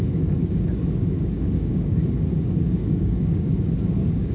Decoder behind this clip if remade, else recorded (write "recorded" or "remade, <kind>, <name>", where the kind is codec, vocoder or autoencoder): remade, codec, DAC